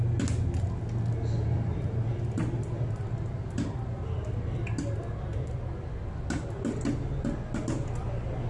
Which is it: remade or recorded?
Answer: recorded